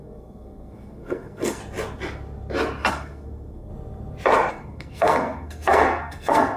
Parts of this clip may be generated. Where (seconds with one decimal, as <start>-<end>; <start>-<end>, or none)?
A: 0.0-1.6; 2.9-3.7; 4.5-6.6